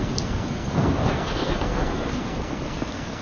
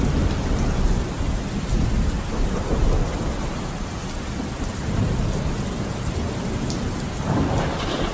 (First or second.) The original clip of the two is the second